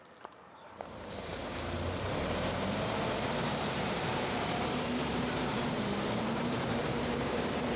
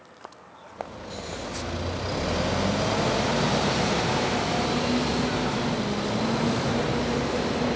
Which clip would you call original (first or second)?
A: second